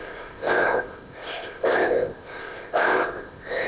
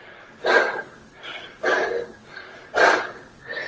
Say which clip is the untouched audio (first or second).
second